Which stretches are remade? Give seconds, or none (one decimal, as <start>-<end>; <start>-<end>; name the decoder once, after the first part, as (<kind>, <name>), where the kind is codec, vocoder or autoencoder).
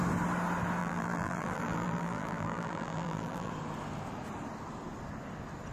0.8-3.5 (vocoder, BigVGAN v2)